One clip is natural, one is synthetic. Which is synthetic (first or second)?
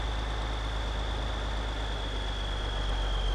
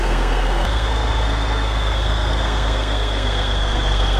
second